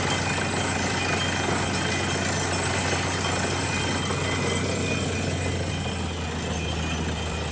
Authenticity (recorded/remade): recorded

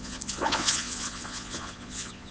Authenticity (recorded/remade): remade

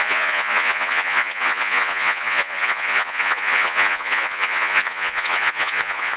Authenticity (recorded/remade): remade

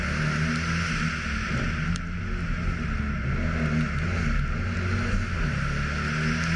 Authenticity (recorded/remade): recorded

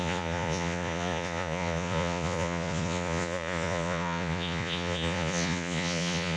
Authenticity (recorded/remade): remade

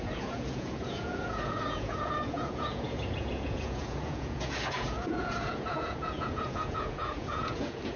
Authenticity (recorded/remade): remade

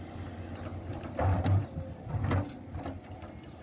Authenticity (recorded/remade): recorded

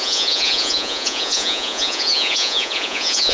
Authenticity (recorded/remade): remade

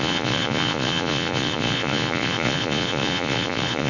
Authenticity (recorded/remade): remade